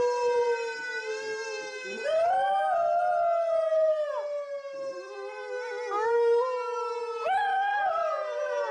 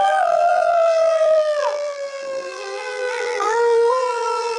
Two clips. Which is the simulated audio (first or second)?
second